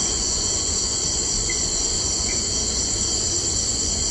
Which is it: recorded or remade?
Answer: remade